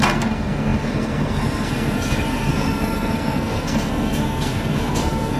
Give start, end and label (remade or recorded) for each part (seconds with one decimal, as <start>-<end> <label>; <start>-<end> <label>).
0.0-5.4 remade